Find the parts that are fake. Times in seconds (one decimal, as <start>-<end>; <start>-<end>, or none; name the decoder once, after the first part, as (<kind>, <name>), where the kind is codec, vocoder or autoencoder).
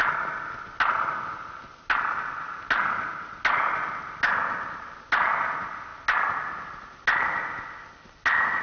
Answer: none